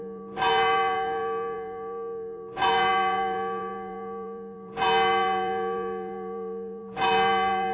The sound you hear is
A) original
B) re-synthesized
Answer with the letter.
B